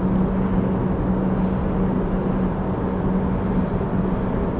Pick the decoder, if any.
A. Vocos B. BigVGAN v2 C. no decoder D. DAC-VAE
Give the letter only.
C